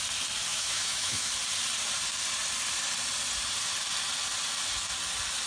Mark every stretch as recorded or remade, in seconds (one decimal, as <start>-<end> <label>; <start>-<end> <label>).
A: 0.0-0.5 recorded; 0.5-1.3 remade; 1.3-5.5 recorded